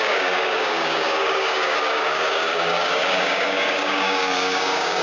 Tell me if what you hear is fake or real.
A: fake